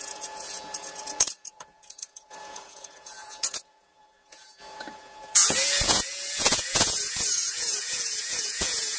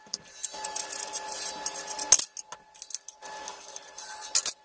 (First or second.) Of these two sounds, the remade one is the first